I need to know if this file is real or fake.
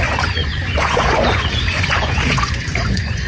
fake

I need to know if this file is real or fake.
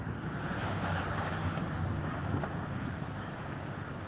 fake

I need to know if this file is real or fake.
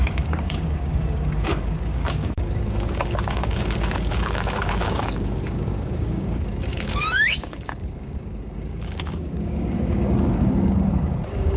fake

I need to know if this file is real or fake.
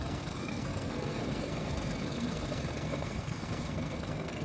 fake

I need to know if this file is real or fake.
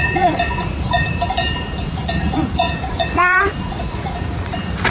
fake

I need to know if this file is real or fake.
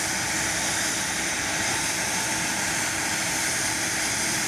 fake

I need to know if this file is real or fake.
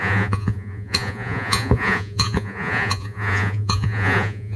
fake